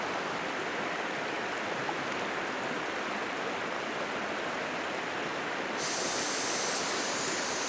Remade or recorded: recorded